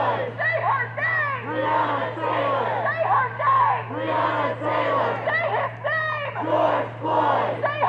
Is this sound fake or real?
real